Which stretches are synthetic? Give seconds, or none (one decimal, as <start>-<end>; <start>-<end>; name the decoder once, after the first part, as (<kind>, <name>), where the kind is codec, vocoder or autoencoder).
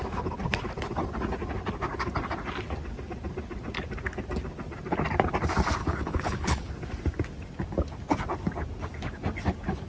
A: 5.8-6.7 (codec, HILCodec)